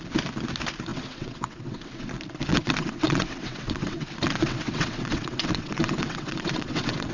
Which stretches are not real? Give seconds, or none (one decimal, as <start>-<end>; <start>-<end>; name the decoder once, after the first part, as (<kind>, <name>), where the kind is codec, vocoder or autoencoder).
0.9-2.1 (vocoder, WaveNeXt); 2.5-7.1